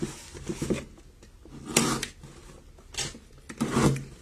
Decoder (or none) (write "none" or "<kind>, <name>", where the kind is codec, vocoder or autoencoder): none